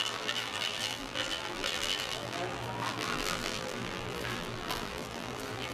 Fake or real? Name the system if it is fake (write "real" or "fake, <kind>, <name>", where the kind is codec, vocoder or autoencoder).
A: fake, vocoder, BigVGAN v2